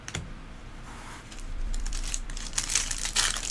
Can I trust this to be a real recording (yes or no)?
no